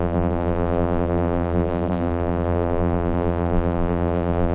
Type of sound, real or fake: fake